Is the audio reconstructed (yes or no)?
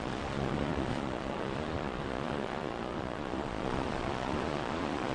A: yes